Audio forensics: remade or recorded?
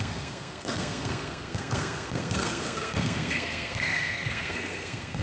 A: remade